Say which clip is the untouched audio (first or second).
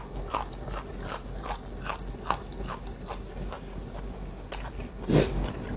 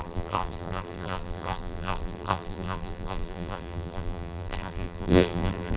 first